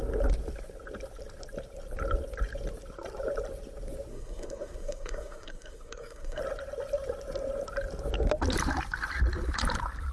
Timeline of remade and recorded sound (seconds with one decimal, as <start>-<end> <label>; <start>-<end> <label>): 0.0-4.1 recorded; 4.1-6.4 remade; 6.4-10.1 recorded